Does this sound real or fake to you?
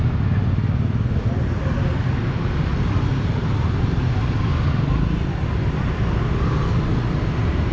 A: real